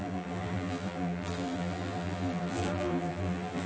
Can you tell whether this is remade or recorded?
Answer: remade